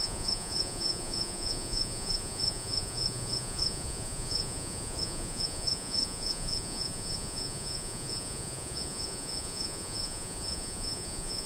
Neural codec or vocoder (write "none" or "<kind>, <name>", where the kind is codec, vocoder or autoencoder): vocoder, Vocos